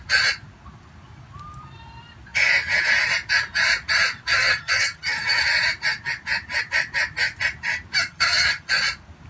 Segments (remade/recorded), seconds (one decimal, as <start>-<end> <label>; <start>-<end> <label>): 0.0-4.3 recorded; 4.3-5.4 remade; 5.4-8.0 recorded; 8.0-8.7 remade; 8.7-9.3 recorded